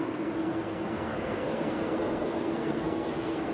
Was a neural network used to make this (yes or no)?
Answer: yes